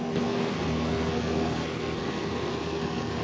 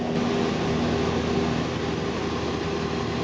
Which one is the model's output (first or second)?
first